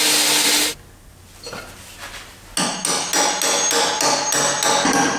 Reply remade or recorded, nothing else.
recorded